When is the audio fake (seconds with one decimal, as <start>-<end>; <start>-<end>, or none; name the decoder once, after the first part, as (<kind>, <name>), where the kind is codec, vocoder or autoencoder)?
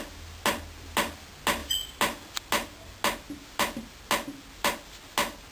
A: none